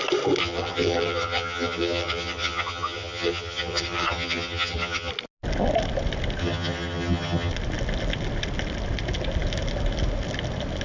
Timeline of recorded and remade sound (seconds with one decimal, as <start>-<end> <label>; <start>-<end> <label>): 0.0-0.4 recorded; 0.4-5.1 remade; 5.1-6.4 recorded; 6.4-7.5 remade; 7.5-10.8 recorded